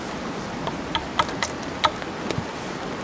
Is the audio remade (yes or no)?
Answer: no